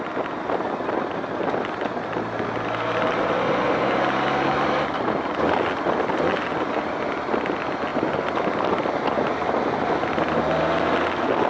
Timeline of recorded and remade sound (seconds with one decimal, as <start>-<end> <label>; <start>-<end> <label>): 0.0-11.5 recorded